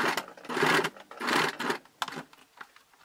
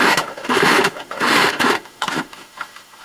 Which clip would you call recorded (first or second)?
first